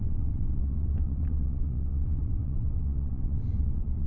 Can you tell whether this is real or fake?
fake